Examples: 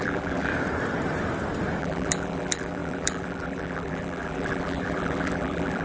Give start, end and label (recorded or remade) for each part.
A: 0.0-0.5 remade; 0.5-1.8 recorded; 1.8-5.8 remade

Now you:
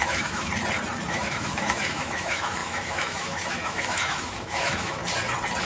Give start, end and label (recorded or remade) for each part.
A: 0.0-0.5 remade; 0.5-1.1 recorded; 1.1-5.0 remade; 5.0-5.6 recorded

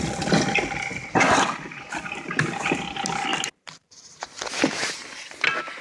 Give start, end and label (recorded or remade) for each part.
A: 0.0-3.3 recorded; 3.3-4.0 remade; 4.0-5.8 recorded

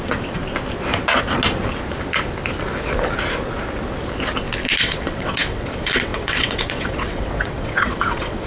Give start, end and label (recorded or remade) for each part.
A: 0.0-0.4 remade; 0.4-4.8 recorded; 4.8-8.5 remade

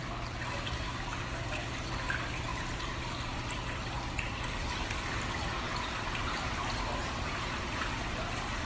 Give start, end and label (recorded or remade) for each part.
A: 0.0-7.0 recorded; 7.0-7.8 remade; 7.8-8.7 recorded